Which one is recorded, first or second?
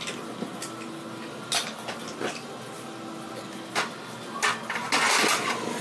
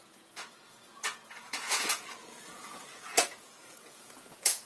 first